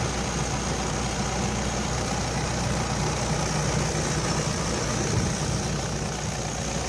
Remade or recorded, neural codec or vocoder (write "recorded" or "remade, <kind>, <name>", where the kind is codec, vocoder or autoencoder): recorded